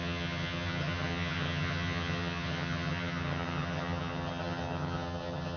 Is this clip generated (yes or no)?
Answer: yes